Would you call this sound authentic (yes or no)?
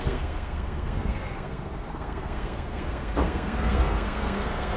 no